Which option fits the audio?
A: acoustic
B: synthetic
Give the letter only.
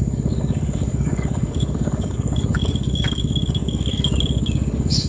B